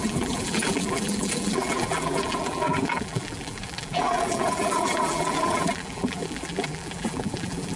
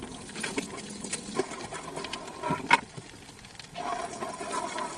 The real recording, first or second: second